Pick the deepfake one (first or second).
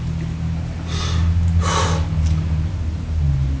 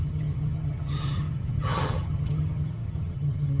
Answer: second